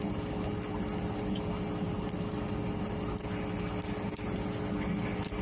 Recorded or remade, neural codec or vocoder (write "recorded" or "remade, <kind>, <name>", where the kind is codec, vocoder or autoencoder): recorded